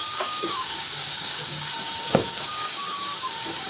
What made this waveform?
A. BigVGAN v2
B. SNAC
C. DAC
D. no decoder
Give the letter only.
C